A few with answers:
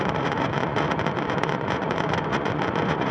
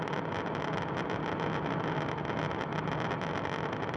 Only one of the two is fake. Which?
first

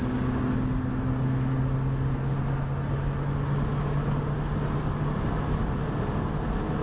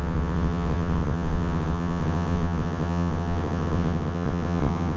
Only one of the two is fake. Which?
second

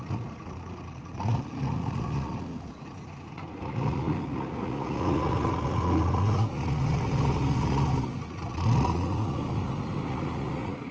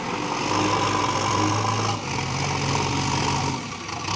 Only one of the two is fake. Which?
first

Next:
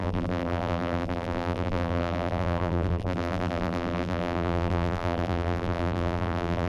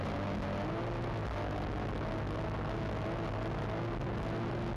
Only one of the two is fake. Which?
first